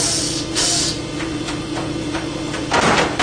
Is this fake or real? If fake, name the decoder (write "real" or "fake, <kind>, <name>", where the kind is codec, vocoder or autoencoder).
real